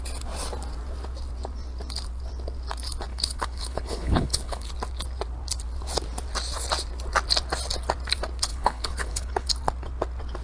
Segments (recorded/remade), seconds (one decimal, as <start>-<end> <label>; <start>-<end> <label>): 0.0-3.1 recorded; 3.1-4.7 remade; 4.7-8.5 recorded; 8.5-9.5 remade; 9.5-10.4 recorded